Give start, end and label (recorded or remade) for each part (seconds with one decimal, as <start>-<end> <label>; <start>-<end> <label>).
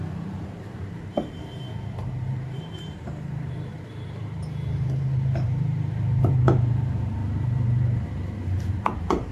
0.0-9.3 remade